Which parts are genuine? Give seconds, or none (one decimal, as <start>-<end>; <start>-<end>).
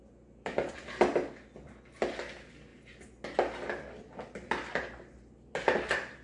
0.0-6.2